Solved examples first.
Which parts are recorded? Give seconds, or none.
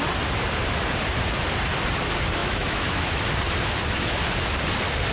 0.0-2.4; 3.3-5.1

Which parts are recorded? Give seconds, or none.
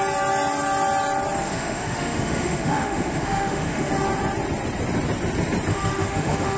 0.0-1.4; 3.9-5.7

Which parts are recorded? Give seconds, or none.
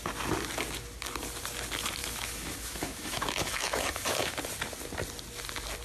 0.0-2.0; 4.4-5.8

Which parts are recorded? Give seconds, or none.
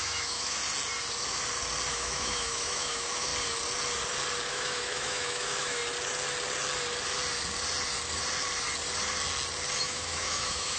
0.6-1.9; 3.3-4.5; 5.8-9.8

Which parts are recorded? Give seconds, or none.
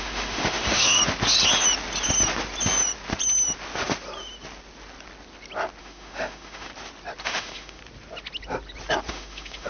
1.0-5.8; 6.7-7.2; 7.8-9.1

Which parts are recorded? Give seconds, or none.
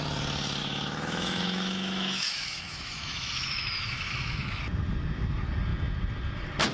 0.0-0.6; 4.6-6.7